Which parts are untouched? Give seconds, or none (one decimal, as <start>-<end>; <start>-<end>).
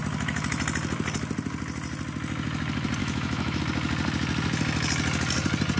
0.0-3.0; 3.6-5.8